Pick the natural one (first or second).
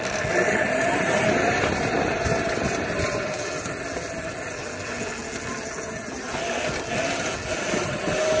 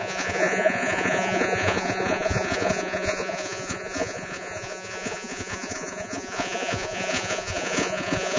first